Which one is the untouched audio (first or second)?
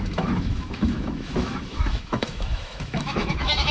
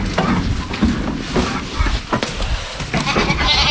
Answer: second